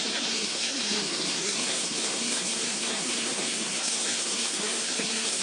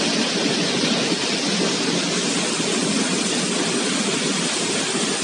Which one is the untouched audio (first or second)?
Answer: second